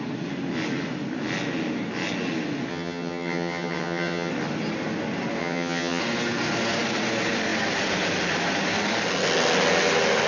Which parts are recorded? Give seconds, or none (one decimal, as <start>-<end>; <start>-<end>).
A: 0.0-2.7; 4.3-5.4; 6.0-10.3